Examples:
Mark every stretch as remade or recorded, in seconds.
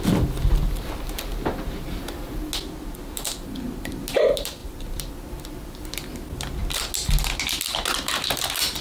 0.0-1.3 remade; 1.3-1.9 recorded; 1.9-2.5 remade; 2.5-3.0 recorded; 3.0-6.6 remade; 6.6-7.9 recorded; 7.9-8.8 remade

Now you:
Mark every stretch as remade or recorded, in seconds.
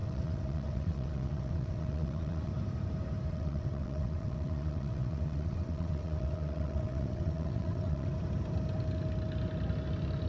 0.0-2.5 remade; 2.5-3.3 recorded; 3.3-8.1 remade; 8.1-10.3 recorded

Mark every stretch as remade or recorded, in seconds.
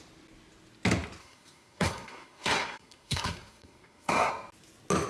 0.0-1.2 recorded; 1.2-4.3 remade; 4.3-5.1 recorded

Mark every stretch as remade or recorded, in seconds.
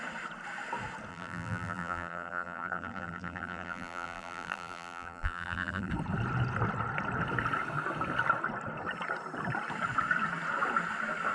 0.0-1.1 recorded; 1.1-5.9 remade; 5.9-11.3 recorded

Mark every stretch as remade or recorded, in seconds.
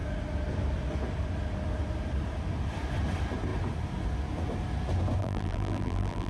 0.0-5.2 recorded; 5.2-6.3 remade